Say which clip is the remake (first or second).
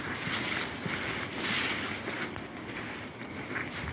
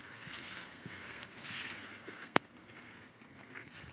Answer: second